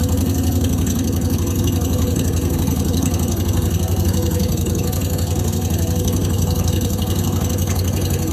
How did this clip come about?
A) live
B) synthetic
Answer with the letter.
B